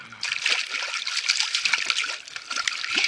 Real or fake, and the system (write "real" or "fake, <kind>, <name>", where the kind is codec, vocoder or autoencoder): real